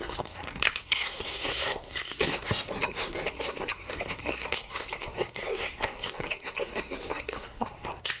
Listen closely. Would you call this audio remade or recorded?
remade